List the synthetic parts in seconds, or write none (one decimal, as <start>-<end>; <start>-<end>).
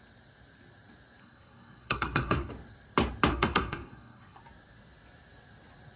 1.2-2.5; 3.3-4.4